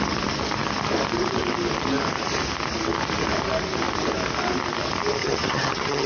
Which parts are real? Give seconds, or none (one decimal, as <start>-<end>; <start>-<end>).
0.0-5.2